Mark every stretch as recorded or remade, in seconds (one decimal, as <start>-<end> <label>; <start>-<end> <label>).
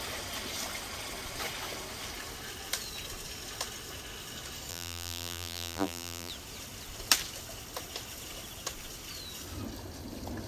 0.0-4.7 recorded; 4.7-6.3 remade; 6.3-10.5 recorded